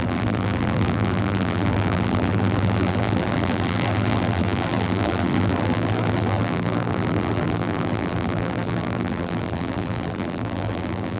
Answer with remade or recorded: remade